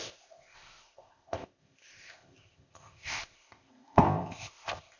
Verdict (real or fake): fake